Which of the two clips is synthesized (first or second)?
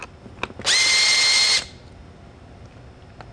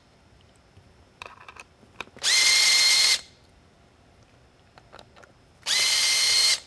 second